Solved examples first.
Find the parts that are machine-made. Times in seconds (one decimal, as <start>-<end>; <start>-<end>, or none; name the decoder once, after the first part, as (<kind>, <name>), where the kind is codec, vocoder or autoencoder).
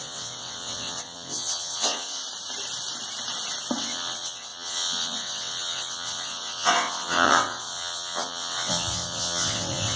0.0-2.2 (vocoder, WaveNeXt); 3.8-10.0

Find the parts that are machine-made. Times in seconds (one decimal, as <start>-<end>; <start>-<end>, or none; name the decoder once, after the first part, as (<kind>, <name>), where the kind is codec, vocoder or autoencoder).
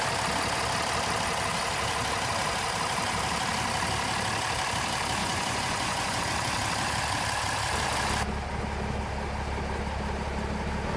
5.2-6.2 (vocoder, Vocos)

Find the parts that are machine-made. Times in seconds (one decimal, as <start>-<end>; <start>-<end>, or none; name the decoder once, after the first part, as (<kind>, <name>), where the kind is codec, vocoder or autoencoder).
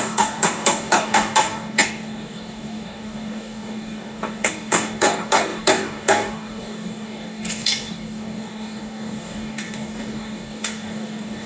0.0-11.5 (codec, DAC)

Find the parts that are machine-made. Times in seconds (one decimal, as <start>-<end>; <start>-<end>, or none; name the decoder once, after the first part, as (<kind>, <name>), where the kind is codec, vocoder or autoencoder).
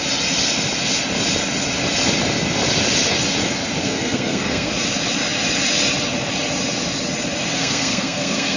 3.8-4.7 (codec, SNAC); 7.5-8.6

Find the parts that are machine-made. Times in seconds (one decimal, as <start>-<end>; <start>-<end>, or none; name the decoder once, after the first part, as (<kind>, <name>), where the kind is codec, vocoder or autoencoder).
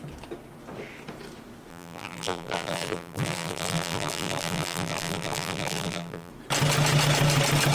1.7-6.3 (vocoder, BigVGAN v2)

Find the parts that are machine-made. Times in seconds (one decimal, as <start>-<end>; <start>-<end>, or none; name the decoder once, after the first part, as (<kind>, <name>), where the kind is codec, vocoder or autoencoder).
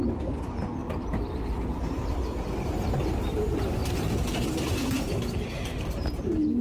0.8-2.1 (vocoder, BigVGAN v2); 3.8-6.6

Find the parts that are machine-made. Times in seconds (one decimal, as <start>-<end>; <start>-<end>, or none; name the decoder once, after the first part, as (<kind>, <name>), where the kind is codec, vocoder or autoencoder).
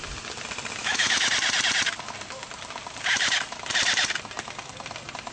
0.8-1.3 (autoencoder, DAC-VAE)